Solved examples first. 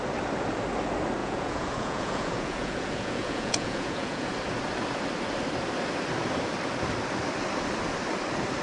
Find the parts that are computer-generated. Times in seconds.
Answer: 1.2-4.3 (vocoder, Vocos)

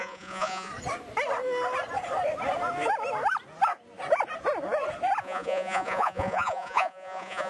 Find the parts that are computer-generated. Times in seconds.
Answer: 0.0-0.7 (vocoder, Vocos); 5.2-7.5

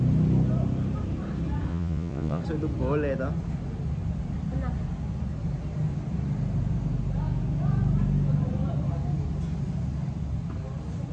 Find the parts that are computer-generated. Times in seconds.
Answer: 1.7-2.4 (vocoder, Vocos)

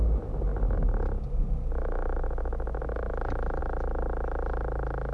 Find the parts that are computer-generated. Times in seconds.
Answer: none

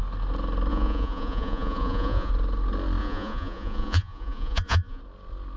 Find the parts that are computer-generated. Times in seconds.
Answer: 0.7-2.3 (vocoder, Vocos); 3.0-5.0

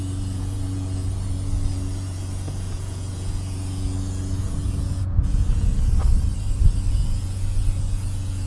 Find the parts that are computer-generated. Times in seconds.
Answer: 0.0-5.7 (vocoder, Vocos); 6.9-8.5